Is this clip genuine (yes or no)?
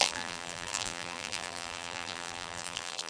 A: no